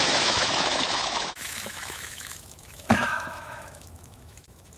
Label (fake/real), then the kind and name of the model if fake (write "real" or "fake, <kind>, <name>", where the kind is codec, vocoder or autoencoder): fake, autoencoder, DAC-VAE